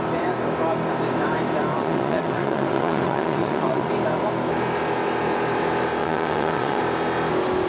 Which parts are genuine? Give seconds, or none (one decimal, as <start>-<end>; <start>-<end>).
0.0-1.7; 3.9-6.0; 6.8-7.7